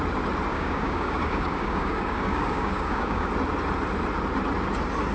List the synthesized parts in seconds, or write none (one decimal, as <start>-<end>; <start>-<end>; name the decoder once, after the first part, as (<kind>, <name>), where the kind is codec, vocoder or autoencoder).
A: 0.5-3.3 (codec, DAC)